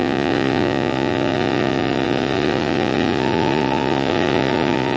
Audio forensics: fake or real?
fake